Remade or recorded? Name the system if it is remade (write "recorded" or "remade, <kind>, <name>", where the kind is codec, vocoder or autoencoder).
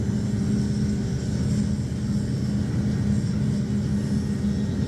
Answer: recorded